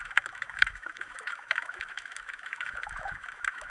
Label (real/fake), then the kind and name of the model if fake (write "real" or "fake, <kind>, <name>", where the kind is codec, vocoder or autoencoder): fake, autoencoder, DAC-VAE